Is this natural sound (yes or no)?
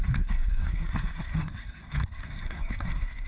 no